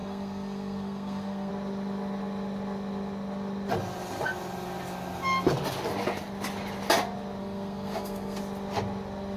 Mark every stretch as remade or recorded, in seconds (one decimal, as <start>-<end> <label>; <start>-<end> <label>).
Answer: 0.0-1.5 remade; 1.5-7.4 recorded; 7.4-8.4 remade; 8.4-9.4 recorded